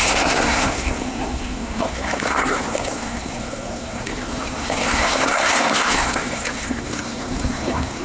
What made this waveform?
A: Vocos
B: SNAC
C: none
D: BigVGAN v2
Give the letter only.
B